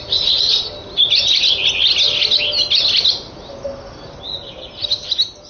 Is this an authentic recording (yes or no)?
yes